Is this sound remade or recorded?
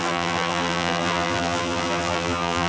remade